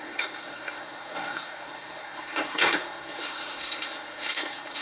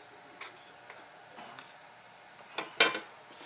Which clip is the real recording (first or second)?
second